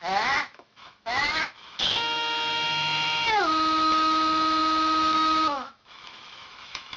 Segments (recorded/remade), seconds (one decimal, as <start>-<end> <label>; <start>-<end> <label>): 0.0-7.0 remade